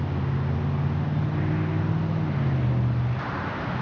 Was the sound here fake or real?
real